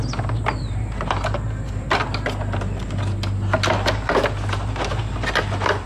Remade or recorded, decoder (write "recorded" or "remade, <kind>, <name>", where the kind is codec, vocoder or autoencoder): recorded